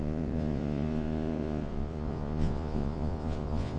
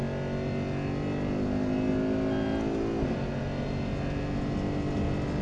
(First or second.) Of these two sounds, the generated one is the first